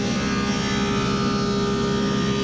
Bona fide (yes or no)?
yes